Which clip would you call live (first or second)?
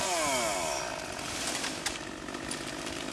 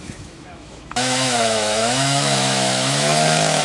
first